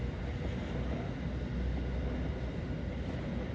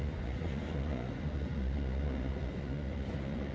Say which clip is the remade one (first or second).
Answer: second